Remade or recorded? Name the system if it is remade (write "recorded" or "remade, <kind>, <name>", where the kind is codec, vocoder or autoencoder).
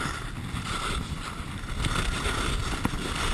recorded